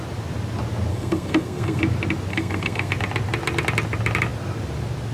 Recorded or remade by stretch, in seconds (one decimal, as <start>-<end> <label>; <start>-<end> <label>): 0.0-0.9 recorded; 0.9-1.8 remade; 1.8-2.3 recorded; 2.3-2.9 remade; 2.9-5.1 recorded